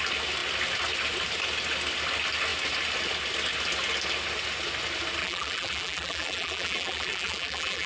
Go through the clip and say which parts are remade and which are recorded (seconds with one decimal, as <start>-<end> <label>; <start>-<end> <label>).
0.0-5.2 recorded; 5.2-7.9 remade

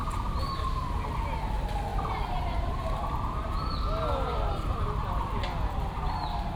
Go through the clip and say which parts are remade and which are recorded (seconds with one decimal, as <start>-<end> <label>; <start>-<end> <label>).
0.0-0.6 remade; 0.6-1.9 recorded; 1.9-4.8 remade; 4.8-6.6 recorded

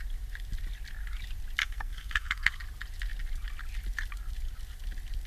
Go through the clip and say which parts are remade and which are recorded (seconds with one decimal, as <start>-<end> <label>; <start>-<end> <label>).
0.0-1.6 recorded; 1.6-2.6 remade; 2.6-5.3 recorded

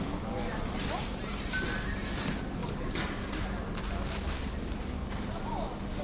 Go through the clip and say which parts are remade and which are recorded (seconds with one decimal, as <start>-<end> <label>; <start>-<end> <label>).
0.0-6.0 recorded

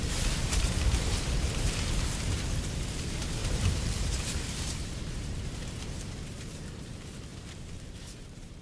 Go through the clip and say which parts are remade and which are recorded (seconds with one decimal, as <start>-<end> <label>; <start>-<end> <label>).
0.0-8.6 remade

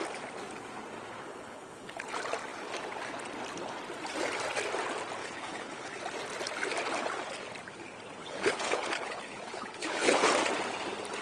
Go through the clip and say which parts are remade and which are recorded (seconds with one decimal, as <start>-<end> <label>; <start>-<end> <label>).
0.0-1.2 recorded; 1.2-2.1 remade; 2.1-5.2 recorded; 5.2-6.0 remade; 6.0-8.2 recorded; 8.2-10.3 remade; 10.3-11.2 recorded

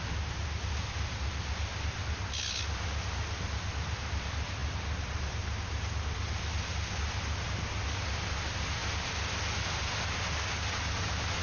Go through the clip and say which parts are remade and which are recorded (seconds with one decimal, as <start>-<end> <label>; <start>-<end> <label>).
0.0-11.4 recorded

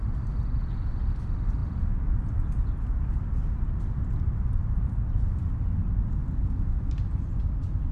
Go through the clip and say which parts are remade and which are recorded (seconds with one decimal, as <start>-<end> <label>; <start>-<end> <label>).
0.0-7.9 recorded